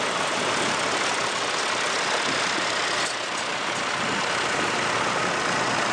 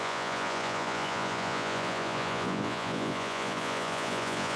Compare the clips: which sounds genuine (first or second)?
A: first